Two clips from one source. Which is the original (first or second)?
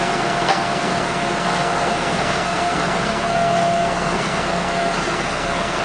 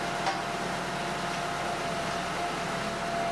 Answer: second